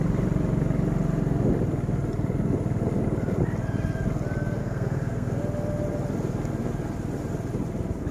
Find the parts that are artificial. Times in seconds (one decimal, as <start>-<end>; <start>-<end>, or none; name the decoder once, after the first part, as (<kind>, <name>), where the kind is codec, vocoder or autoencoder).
4.6-5.4 (codec, SNAC)